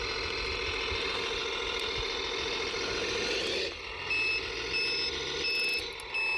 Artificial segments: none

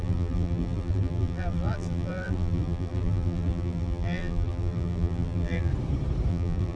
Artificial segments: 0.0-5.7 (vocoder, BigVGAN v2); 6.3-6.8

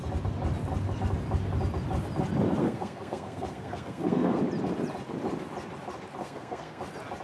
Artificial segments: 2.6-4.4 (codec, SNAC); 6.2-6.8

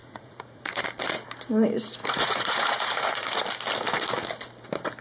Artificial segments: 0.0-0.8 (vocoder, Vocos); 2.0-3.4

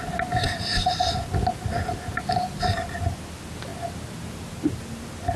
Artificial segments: none

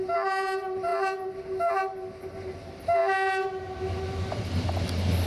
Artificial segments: none